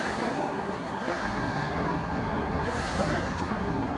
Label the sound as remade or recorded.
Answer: remade